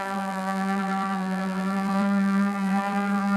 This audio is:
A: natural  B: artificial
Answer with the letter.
B